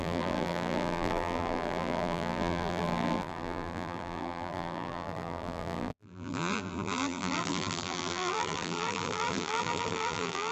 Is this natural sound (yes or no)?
no